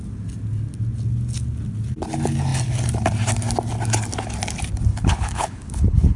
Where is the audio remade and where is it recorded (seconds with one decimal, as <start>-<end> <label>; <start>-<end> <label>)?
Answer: 0.0-4.9 recorded; 4.9-6.2 remade